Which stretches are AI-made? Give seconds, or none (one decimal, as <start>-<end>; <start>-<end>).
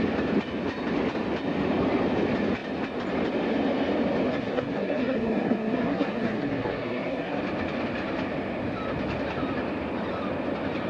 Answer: 4.3-7.4